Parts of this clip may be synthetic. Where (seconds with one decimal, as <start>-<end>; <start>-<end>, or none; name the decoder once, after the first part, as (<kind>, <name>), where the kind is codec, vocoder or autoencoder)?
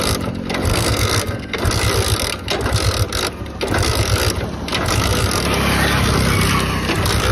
0.7-1.6 (codec, SNAC)